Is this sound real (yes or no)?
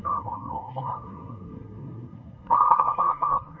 no